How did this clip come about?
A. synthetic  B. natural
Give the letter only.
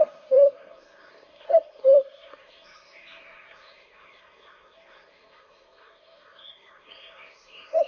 A